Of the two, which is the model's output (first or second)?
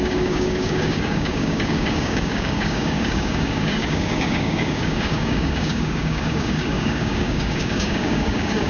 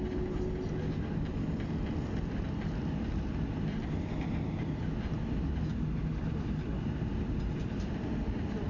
first